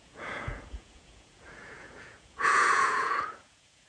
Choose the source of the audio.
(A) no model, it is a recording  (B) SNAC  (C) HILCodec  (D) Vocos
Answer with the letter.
D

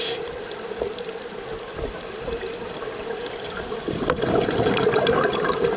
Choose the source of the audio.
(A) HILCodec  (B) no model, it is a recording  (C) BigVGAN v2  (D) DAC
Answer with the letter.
B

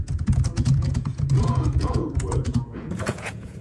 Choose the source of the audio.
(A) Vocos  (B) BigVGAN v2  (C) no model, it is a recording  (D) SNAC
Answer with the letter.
A